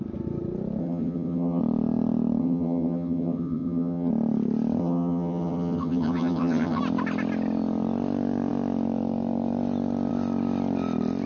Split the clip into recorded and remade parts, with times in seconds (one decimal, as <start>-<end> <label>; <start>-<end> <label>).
0.0-0.8 recorded; 0.8-1.6 remade; 1.6-2.4 recorded; 2.4-4.1 remade; 4.1-4.8 recorded; 4.8-6.8 remade; 6.8-11.3 recorded